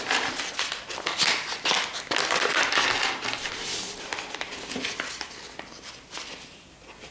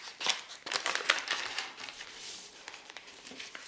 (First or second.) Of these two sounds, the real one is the first